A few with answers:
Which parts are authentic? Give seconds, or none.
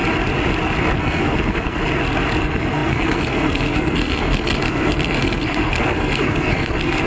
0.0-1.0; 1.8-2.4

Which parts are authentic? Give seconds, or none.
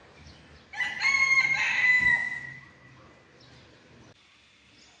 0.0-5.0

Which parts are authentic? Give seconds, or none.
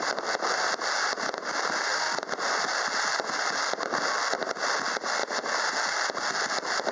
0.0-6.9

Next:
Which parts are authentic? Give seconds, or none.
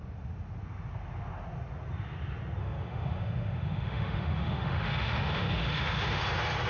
0.0-2.6; 6.2-6.7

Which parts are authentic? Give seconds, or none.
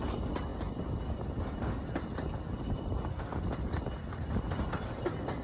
0.0-5.4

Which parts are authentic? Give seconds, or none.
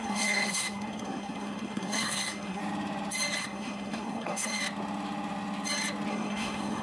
2.6-3.4; 4.6-6.1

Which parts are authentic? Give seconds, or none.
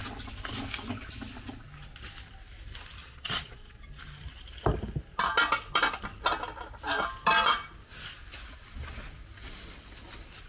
0.0-3.0; 3.8-10.5